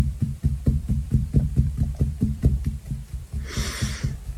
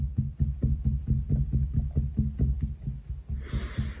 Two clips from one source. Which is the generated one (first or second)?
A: first